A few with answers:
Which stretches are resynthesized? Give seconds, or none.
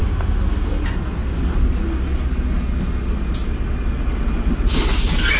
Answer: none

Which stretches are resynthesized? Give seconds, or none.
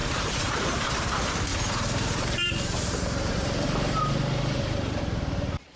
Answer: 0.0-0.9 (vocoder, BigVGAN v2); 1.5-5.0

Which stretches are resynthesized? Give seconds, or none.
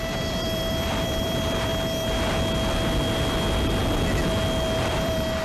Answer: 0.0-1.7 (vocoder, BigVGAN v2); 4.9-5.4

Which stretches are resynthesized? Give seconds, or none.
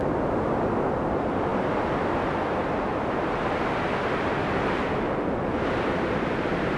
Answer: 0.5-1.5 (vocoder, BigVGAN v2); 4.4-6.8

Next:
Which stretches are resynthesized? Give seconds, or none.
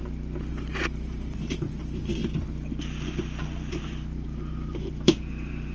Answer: 0.5-2.2 (vocoder, BigVGAN v2); 3.7-5.7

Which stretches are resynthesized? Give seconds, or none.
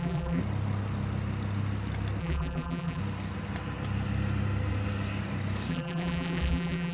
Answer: 0.0-0.4 (vocoder, BigVGAN v2); 2.2-3.0; 5.7-6.9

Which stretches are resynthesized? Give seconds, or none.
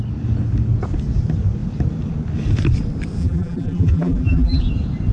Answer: 3.2-4.6 (vocoder, BigVGAN v2)